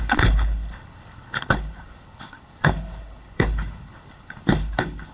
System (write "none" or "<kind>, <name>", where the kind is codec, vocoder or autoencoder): codec, HILCodec